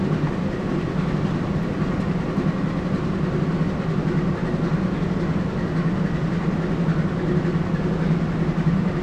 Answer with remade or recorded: recorded